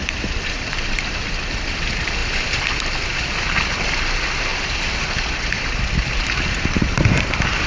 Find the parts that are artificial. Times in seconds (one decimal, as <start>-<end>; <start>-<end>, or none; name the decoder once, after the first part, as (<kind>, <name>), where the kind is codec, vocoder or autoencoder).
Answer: none